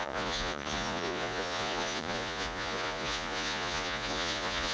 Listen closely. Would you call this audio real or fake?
fake